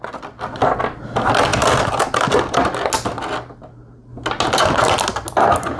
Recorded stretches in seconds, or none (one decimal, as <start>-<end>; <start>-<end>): 0.0-5.8